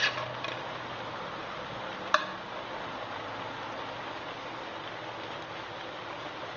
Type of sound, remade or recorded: recorded